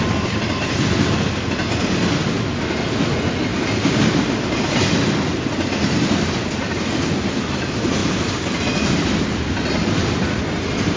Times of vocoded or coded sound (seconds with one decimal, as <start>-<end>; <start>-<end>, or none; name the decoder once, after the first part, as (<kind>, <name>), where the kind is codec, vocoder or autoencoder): 3.5-5.0 (vocoder, BigVGAN v2)